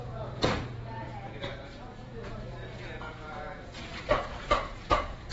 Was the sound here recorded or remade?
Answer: remade